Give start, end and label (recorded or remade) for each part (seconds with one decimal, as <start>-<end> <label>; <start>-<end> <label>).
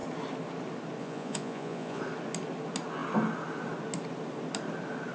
0.0-1.0 recorded; 1.0-2.0 remade; 2.0-5.1 recorded